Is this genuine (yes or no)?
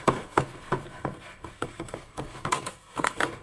no